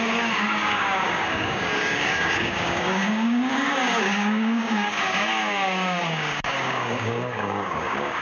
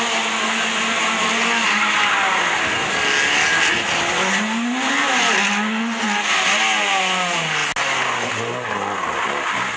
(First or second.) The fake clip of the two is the first